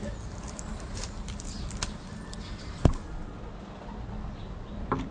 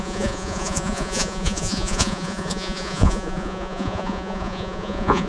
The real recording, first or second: first